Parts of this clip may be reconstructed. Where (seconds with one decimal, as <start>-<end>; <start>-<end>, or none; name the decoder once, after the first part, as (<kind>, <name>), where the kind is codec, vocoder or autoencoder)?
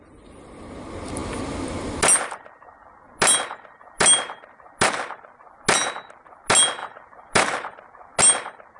none